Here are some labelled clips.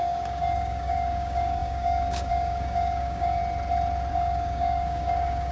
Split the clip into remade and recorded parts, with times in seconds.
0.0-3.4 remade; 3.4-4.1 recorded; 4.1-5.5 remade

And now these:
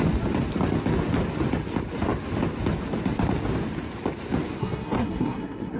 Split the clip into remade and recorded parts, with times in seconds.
0.0-4.6 recorded; 4.6-5.8 remade

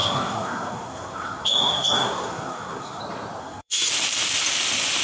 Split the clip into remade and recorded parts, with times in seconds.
0.0-3.0 remade; 3.0-3.4 recorded; 3.4-3.9 remade; 3.9-5.0 recorded